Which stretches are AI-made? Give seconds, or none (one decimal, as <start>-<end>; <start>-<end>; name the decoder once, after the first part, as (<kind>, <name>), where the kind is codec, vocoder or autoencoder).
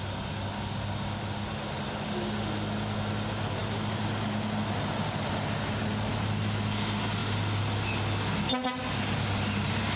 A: none